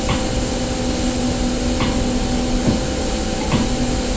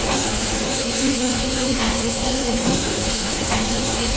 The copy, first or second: second